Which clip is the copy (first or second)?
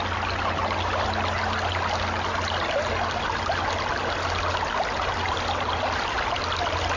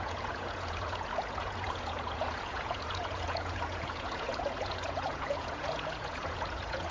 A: second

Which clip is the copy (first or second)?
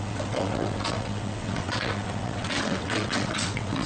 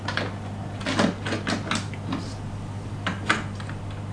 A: first